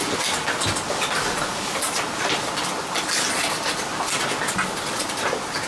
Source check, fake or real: real